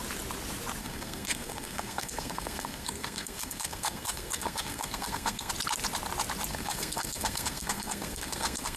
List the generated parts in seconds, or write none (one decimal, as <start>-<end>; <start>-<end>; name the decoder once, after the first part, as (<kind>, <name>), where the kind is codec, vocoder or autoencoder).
0.8-5.5 (codec, SNAC); 6.5-8.8